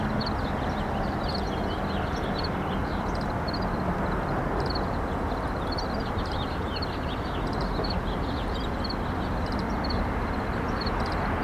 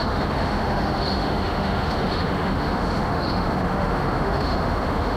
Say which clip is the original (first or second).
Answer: first